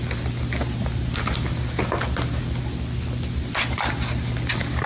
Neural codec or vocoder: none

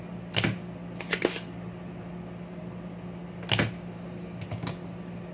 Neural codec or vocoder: none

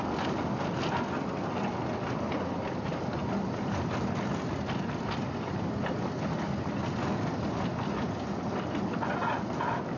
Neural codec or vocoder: none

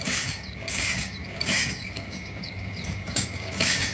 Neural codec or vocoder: codec, DAC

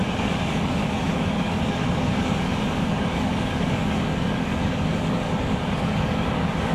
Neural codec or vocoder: codec, DAC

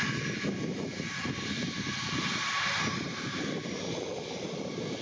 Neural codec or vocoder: none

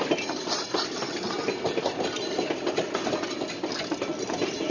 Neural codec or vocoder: none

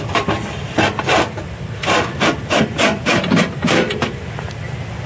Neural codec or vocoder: none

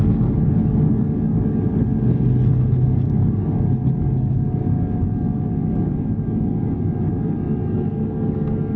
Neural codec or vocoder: codec, DAC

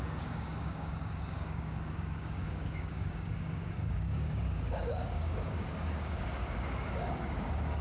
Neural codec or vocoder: codec, DAC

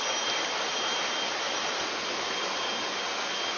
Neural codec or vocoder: none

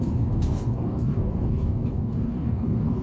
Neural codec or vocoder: codec, DAC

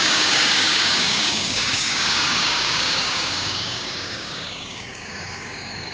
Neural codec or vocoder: codec, DAC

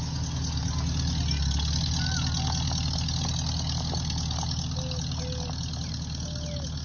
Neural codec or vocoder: none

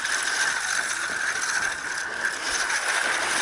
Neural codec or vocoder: none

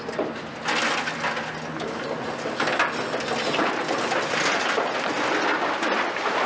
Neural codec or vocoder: none